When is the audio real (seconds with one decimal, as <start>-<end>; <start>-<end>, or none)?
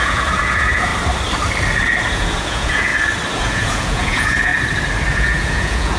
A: 0.9-2.1; 2.9-3.4; 4.5-5.1